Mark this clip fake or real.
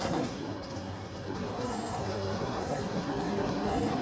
fake